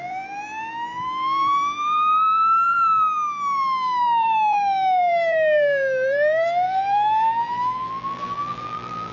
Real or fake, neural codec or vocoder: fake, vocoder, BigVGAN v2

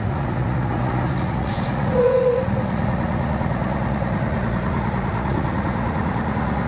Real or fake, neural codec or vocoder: fake, vocoder, Vocos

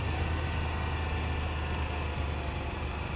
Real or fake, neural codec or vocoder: real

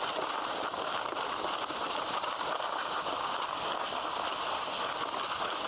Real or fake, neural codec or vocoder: real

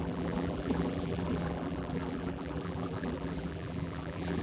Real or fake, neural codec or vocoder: fake, vocoder, BigVGAN v2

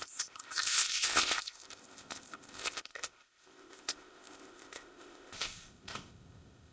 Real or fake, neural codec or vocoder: fake, codec, ZipCodec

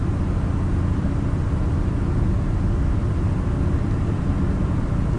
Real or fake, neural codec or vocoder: real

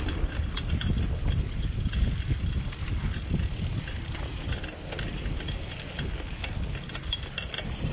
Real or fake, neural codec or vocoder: real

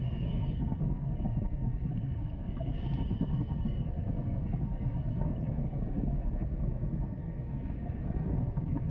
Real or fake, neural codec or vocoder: fake, codec, SNAC